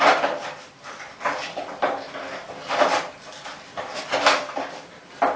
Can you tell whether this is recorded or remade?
remade